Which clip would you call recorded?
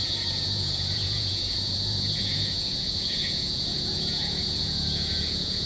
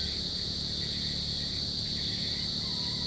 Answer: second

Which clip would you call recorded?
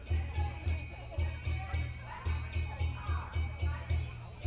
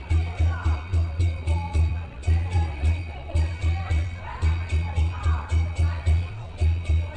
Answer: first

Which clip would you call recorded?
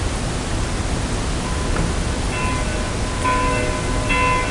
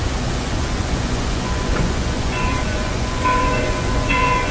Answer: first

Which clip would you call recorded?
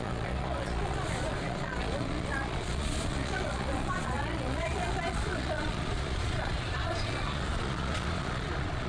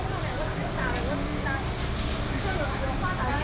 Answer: second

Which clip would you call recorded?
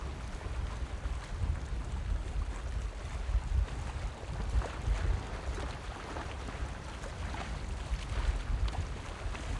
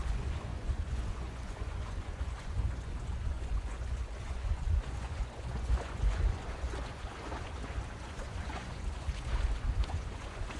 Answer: first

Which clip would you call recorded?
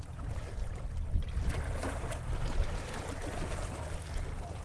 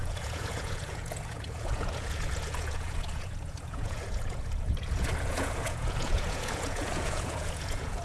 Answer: first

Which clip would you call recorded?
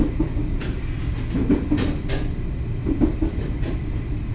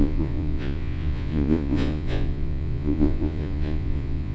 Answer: first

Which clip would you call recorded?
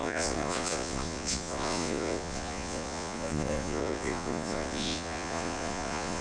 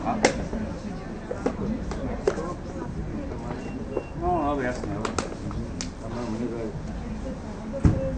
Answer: second